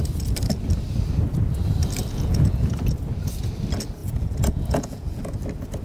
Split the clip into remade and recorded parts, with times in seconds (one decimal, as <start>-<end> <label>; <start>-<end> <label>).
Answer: 0.0-2.1 recorded; 2.1-2.7 remade; 2.7-4.0 recorded; 4.0-5.2 remade; 5.2-5.8 recorded